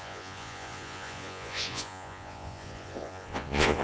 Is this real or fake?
fake